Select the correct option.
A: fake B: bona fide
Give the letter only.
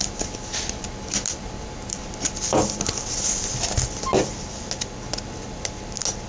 B